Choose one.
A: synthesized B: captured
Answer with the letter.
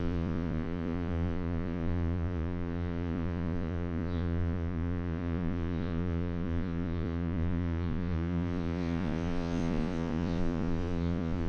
A